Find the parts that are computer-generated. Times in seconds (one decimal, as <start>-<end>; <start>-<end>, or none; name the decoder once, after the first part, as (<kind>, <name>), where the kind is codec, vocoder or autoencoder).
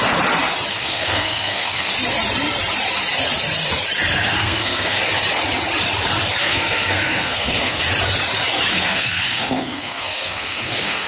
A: 0.7-1.9 (codec, SNAC); 4.4-5.0; 6.4-7.8; 8.7-11.1